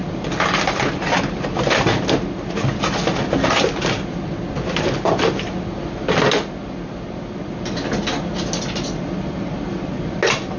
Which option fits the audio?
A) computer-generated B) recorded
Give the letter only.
B